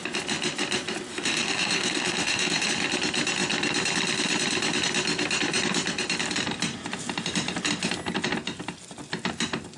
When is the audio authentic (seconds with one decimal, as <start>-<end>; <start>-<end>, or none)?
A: 0.0-1.1; 2.7-9.8